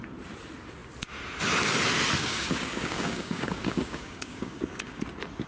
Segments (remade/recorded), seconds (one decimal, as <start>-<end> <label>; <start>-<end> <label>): 0.0-2.2 recorded; 2.2-5.0 remade; 5.0-5.5 recorded